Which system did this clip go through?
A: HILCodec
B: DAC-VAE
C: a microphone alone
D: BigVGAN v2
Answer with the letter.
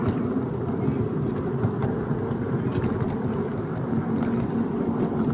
C